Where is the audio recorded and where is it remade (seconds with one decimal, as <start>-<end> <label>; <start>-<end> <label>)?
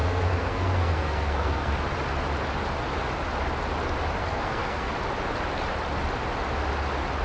0.0-1.8 remade; 1.8-4.2 recorded; 4.2-4.9 remade; 4.9-7.2 recorded